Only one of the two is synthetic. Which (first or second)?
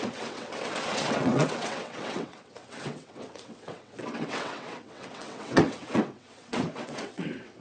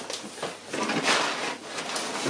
first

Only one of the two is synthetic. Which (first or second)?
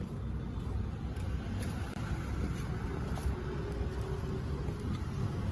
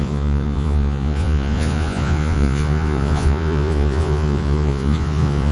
second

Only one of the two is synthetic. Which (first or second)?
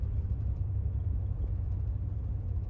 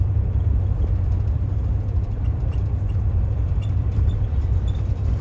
second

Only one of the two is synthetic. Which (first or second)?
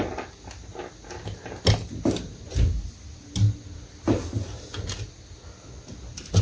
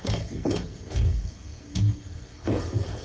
second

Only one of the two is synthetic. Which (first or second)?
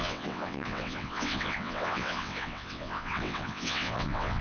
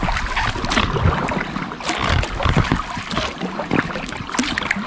first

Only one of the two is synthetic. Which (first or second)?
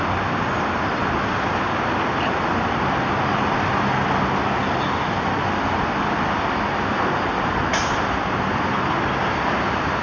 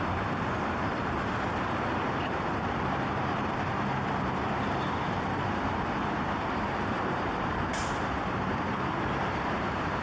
second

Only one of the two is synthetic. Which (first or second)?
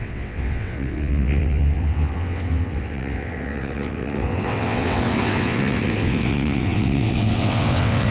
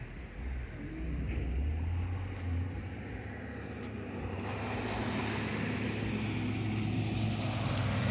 first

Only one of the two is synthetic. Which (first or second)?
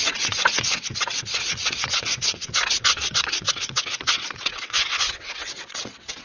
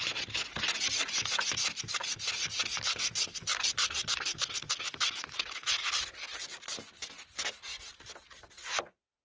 first